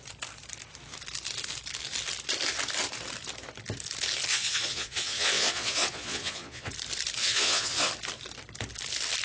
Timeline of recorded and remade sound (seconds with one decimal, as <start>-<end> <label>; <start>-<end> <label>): 0.0-4.3 recorded; 4.3-6.7 remade; 6.7-7.2 recorded; 7.2-7.9 remade; 7.9-9.2 recorded

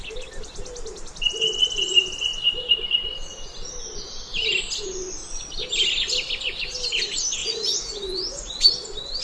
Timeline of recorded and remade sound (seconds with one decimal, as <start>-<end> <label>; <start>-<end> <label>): 0.0-7.4 recorded; 7.4-8.6 remade; 8.6-9.2 recorded

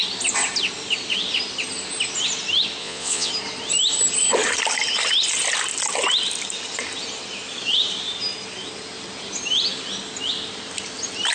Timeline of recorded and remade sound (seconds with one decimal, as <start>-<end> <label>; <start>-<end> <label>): 0.0-2.8 recorded; 2.8-3.3 remade; 3.3-11.3 recorded

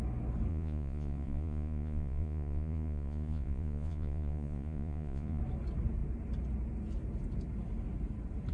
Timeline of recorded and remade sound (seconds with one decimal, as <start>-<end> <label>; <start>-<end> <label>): 0.0-0.5 recorded; 0.5-5.4 remade; 5.4-8.5 recorded

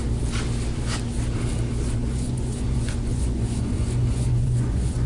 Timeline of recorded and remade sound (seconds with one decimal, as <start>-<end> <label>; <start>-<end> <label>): 0.0-2.0 recorded; 2.0-5.1 remade

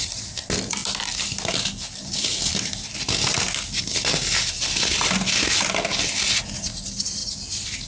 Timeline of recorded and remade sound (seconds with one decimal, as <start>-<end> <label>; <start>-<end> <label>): 0.0-7.9 recorded

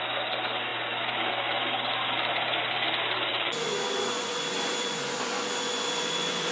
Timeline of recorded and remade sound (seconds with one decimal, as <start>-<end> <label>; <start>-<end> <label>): 0.0-3.3 recorded; 3.3-6.5 remade